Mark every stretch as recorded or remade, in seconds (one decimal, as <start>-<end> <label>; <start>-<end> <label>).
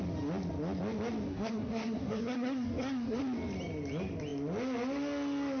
0.0-1.3 recorded; 1.3-3.2 remade; 3.2-5.6 recorded